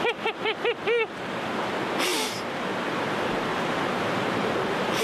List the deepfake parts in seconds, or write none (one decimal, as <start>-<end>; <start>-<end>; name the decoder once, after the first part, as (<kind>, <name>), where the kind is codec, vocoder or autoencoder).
2.1-2.7 (vocoder, BigVGAN v2); 3.5-5.0